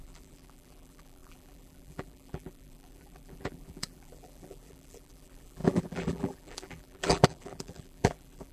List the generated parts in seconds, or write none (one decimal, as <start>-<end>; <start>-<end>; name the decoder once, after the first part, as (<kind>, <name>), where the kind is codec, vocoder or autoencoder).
0.0-8.5 (vocoder, BigVGAN v2)

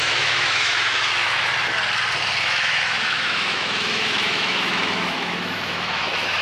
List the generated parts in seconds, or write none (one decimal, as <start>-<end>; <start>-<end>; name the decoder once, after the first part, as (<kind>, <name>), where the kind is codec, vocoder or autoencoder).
0.0-1.5 (autoencoder, DAC-VAE); 2.4-6.4

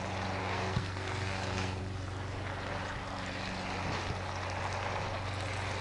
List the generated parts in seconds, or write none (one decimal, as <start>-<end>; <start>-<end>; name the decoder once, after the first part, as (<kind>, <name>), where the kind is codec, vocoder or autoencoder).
0.4-1.8 (codec, SNAC)